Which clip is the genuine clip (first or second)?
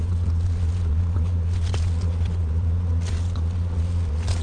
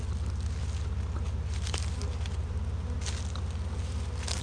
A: second